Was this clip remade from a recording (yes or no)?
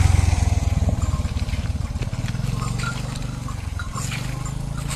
no